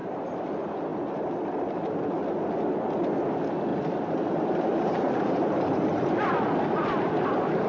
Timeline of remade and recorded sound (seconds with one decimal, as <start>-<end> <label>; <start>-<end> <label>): 0.0-0.5 remade; 0.5-3.7 recorded; 3.7-6.3 remade; 6.3-7.7 recorded